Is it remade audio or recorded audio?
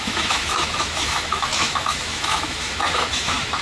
remade